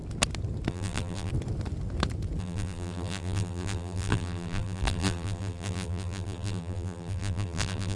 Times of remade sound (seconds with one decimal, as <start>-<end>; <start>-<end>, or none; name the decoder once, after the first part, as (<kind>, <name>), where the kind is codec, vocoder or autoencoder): 0.7-1.3 (vocoder, BigVGAN v2); 2.4-8.0